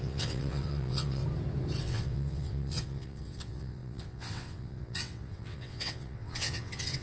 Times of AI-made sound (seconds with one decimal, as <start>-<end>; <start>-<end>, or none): 0.0-1.2; 1.8-7.0